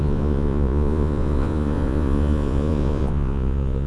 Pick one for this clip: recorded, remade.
remade